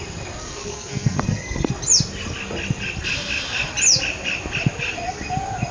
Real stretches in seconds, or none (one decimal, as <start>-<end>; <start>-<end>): 0.0-0.4; 1.7-5.7